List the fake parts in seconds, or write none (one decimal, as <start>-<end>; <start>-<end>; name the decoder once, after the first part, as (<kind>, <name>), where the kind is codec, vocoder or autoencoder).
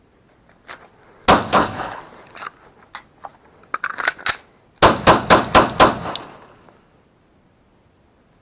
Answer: 1.5-2.0 (codec, HILCodec)